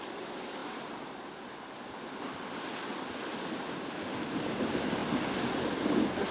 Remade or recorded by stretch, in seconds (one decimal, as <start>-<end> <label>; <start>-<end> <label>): 0.0-6.3 recorded